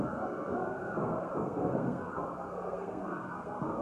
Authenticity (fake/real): fake